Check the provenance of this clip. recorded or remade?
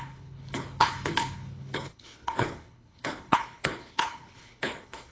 remade